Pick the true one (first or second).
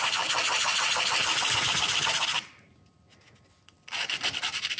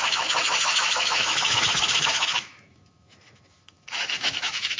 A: first